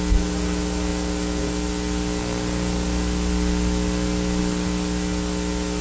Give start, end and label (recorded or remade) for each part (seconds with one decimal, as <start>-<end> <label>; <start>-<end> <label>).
0.0-5.8 recorded